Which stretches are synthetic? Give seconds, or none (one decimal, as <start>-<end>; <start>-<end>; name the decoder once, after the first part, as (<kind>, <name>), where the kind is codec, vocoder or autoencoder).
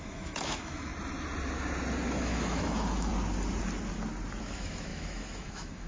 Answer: 0.0-0.9 (autoencoder, DAC-VAE); 2.2-3.1; 4.4-5.9